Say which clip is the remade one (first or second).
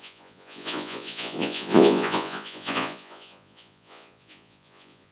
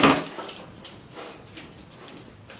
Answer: first